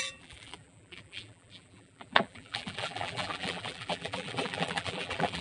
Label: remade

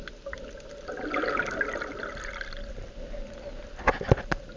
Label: recorded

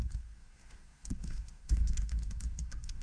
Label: remade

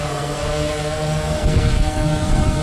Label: remade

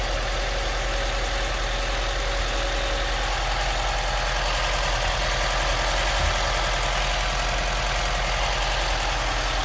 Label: recorded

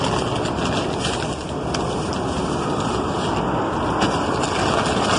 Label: recorded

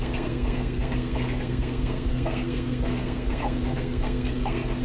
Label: remade